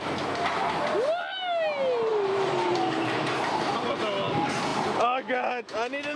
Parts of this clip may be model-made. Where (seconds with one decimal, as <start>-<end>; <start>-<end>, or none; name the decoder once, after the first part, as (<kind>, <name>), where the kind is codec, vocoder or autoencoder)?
2.1-4.0 (vocoder, BigVGAN v2)